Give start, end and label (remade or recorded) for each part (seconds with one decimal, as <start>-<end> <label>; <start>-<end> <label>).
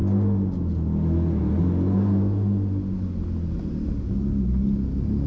0.0-5.3 recorded